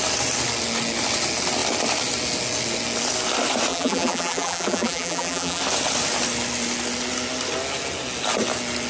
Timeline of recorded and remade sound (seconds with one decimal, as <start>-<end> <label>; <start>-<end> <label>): 0.0-3.7 recorded; 3.7-5.6 remade; 5.6-8.9 recorded